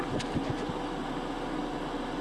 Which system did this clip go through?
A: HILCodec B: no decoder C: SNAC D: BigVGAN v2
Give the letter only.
B